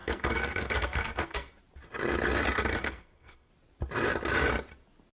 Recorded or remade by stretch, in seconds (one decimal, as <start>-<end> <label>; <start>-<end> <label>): 0.0-1.5 remade; 1.5-2.7 recorded; 2.7-3.5 remade; 3.5-5.2 recorded